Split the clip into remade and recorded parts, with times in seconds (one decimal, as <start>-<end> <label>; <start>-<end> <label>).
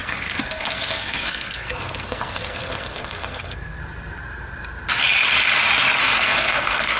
0.0-3.8 remade; 3.8-6.0 recorded; 6.0-7.0 remade